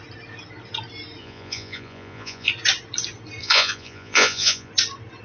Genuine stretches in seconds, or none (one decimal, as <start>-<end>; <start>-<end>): 0.0-1.2; 2.5-3.4; 4.7-5.2